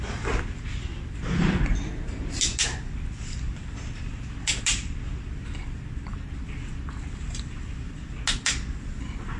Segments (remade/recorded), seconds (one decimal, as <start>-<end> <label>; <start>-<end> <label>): 0.0-6.1 recorded; 6.1-7.8 remade; 7.8-9.4 recorded

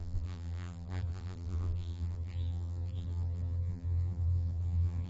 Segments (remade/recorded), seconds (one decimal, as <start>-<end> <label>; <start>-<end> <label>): 0.0-5.1 remade

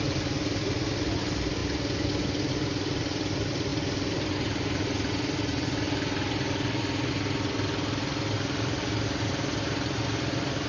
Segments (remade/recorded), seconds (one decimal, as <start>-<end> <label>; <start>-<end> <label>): 0.0-10.7 remade

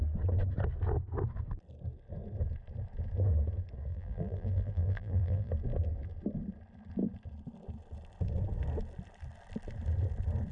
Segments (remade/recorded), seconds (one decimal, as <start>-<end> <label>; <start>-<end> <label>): 0.0-3.9 recorded; 3.9-5.5 remade; 5.5-10.5 recorded

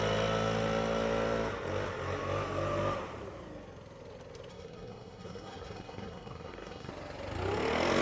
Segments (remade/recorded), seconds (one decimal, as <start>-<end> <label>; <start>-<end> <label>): 0.0-4.5 recorded; 4.5-6.9 remade; 6.9-8.0 recorded

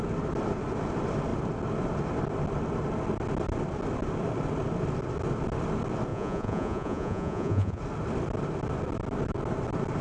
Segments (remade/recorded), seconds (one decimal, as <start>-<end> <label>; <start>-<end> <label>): 0.0-6.1 recorded; 6.1-7.8 remade; 7.8-10.0 recorded

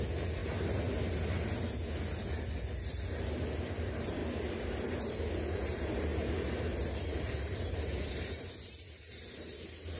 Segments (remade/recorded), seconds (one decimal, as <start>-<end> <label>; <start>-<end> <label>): 0.0-0.4 remade; 0.4-2.8 recorded; 2.8-4.2 remade; 4.2-5.5 recorded; 5.5-10.0 remade